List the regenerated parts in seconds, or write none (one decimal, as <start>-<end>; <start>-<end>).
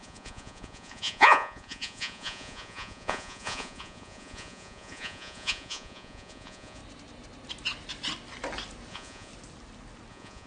0.0-6.8; 8.9-9.3; 10.1-10.5